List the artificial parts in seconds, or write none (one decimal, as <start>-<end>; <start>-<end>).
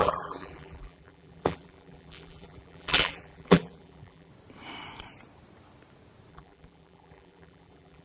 0.0-4.3; 6.3-8.0